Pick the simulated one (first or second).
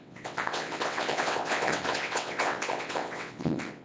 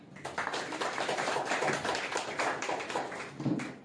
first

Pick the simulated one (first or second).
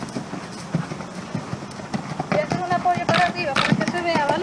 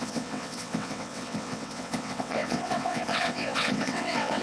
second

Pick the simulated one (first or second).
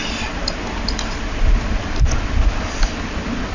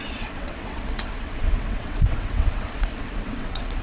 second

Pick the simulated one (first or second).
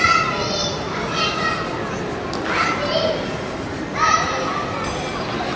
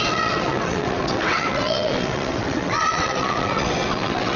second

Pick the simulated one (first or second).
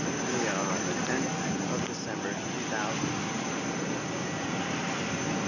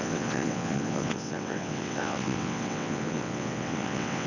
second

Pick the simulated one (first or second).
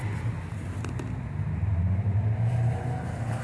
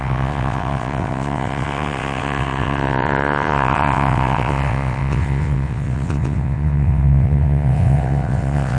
second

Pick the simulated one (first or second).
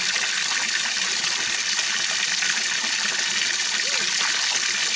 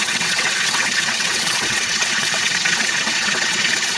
second